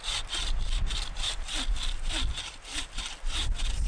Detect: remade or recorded recorded